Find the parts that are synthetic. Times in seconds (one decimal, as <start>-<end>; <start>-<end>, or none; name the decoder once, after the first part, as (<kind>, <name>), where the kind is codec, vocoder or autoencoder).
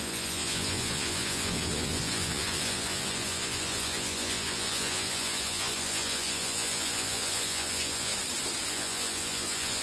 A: 0.0-8.1 (vocoder, Vocos); 8.7-9.8